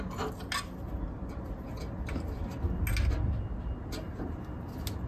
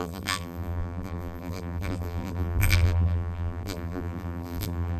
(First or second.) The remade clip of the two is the second